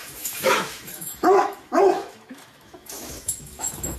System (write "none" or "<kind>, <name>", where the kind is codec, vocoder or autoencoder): autoencoder, DAC-VAE